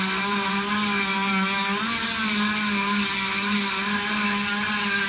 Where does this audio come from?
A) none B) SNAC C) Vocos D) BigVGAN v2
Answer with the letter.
A